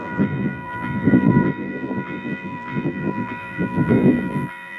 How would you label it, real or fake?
fake